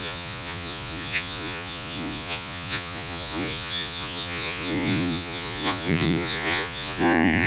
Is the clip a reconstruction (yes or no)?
yes